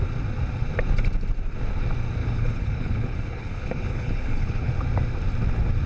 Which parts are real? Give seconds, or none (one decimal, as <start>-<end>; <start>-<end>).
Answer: 0.0-2.2; 4.7-5.9